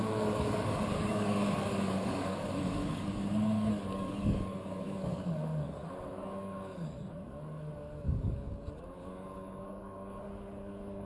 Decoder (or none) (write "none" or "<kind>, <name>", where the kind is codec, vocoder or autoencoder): codec, DAC